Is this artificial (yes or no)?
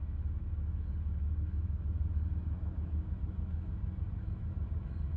yes